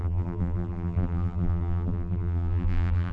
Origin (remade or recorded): remade